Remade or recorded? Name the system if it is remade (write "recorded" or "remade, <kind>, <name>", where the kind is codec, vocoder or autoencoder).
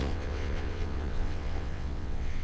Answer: remade, vocoder, WaveNeXt